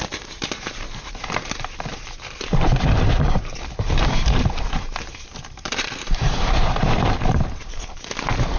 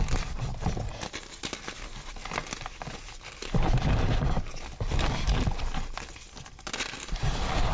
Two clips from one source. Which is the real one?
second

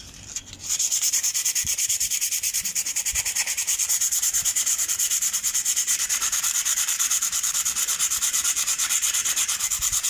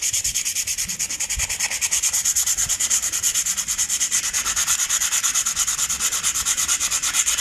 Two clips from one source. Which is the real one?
second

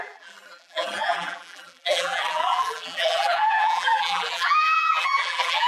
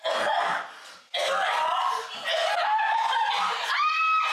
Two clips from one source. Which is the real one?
second